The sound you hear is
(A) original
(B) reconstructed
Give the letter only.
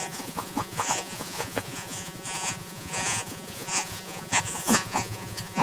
B